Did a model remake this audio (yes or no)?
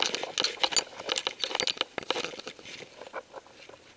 no